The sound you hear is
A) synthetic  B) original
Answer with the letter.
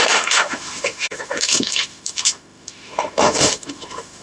A